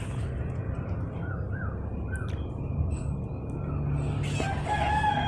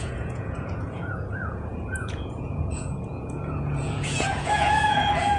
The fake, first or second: second